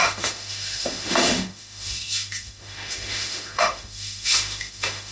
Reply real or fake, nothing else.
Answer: fake